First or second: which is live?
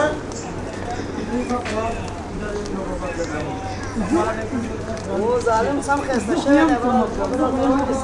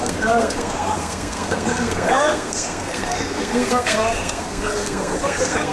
first